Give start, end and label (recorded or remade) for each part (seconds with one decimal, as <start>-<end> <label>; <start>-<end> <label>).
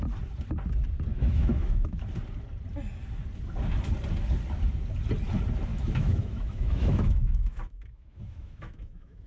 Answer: 0.0-1.1 recorded; 1.1-2.1 remade; 2.1-5.7 recorded; 5.7-9.3 remade